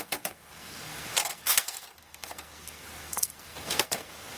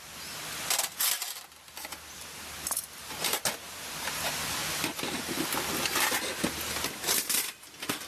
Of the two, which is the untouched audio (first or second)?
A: second